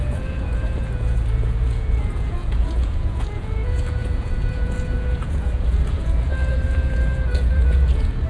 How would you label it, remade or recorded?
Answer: remade